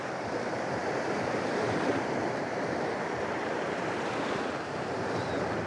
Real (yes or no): no